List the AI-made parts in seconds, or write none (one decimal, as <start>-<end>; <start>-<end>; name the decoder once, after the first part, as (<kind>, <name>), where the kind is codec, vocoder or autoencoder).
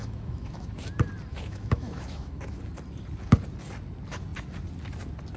0.0-0.8 (autoencoder, DAC-VAE); 1.3-2.6